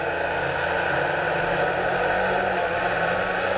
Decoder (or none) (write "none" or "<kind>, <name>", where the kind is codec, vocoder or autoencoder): none